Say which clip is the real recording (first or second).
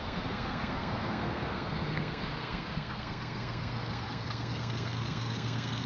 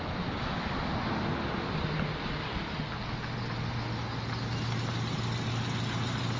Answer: second